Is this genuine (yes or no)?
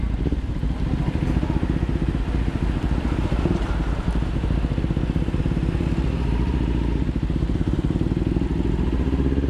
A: yes